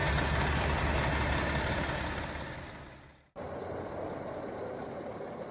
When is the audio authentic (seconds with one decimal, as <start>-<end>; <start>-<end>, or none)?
0.0-5.5